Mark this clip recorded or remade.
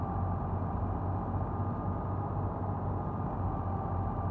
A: recorded